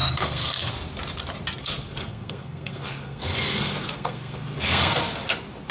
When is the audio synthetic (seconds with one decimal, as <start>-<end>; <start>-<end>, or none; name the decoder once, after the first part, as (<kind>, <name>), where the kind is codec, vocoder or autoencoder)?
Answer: 0.0-0.7 (codec, SNAC); 1.6-5.0

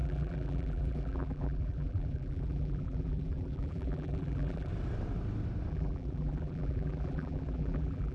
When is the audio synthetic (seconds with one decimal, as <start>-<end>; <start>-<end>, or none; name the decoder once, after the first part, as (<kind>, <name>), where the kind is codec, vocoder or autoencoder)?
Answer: 0.0-4.7 (vocoder, BigVGAN v2); 5.7-8.1

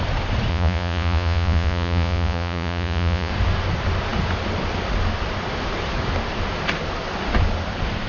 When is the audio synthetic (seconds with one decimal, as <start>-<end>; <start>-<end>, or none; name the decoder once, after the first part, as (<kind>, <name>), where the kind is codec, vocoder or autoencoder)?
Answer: 0.5-3.3 (vocoder, Vocos)

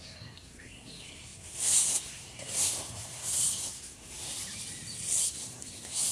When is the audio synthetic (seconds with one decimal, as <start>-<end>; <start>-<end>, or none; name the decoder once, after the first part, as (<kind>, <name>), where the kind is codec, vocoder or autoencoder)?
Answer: 0.0-4.3 (codec, SNAC); 5.2-6.1

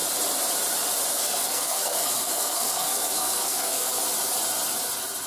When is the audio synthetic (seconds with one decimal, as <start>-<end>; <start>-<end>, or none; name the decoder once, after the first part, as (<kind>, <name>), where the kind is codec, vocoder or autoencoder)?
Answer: 1.1-4.0 (codec, SNAC)

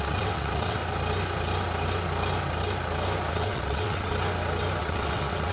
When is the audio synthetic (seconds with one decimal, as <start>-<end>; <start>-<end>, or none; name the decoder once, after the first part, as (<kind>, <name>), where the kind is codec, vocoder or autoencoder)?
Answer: 0.0-0.8 (vocoder, WaveNeXt); 3.3-4.1; 4.8-5.5

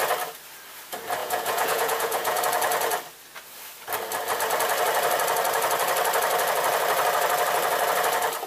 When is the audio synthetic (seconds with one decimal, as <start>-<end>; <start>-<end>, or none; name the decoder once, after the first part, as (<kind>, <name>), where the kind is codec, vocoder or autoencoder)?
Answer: 1.2-2.4 (vocoder, Vocos)

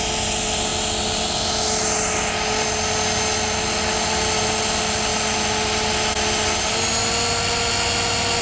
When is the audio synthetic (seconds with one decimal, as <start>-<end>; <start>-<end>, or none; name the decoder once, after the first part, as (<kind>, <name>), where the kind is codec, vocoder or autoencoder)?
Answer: none